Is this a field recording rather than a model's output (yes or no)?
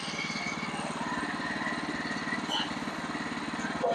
yes